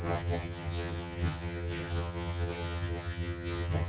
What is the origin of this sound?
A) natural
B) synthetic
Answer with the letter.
B